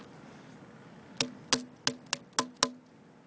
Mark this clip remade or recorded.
recorded